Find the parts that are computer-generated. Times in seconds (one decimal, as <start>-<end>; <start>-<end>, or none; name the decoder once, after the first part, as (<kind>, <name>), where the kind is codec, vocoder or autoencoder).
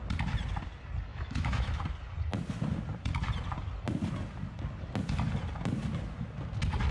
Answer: 1.1-1.8 (autoencoder, DAC-VAE)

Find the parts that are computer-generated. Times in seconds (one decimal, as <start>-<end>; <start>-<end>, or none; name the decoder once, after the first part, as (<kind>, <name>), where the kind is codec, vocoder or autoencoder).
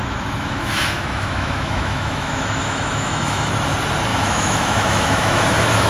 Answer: 0.0-3.5 (autoencoder, DAC-VAE); 4.1-5.9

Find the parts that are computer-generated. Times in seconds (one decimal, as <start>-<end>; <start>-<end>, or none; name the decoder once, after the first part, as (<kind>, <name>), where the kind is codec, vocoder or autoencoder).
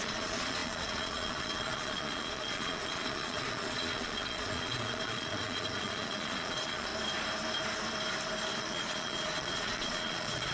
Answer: 0.0-6.9 (vocoder, Vocos); 8.6-10.5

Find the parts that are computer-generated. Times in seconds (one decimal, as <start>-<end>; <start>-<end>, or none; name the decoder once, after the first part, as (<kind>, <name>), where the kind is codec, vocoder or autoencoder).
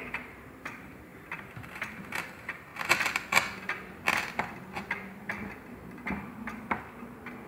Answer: 0.0-2.7 (vocoder, BigVGAN v2)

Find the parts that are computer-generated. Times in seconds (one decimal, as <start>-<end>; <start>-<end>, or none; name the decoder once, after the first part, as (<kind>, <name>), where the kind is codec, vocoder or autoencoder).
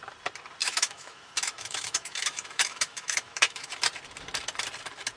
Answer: 0.6-3.7 (autoencoder, DAC-VAE)